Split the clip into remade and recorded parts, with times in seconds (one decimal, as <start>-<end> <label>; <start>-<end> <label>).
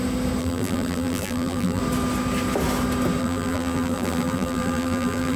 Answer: 0.0-0.4 recorded; 0.4-1.8 remade; 1.8-3.2 recorded; 3.2-5.4 remade